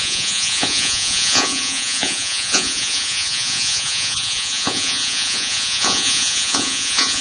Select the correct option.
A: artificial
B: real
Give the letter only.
A